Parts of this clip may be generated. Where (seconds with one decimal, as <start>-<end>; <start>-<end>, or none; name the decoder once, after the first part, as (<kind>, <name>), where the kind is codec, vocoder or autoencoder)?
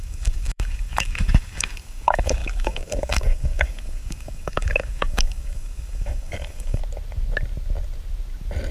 0.0-6.8 (codec, DAC)